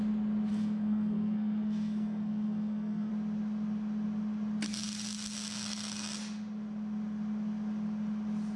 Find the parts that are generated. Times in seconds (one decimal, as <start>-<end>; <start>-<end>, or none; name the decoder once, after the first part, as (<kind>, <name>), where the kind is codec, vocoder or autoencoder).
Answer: 0.5-3.1 (codec, SNAC)